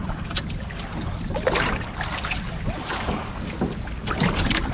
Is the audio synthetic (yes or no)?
no